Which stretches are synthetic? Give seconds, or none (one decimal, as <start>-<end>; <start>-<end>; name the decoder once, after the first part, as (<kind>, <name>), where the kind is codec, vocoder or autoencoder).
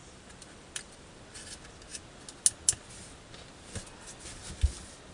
0.0-1.2 (vocoder, BigVGAN v2)